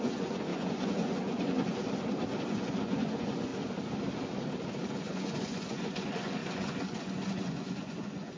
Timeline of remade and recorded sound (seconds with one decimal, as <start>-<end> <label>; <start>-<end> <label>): 0.0-1.8 remade; 1.8-2.5 recorded; 2.5-3.5 remade; 3.5-4.9 recorded; 4.9-8.4 remade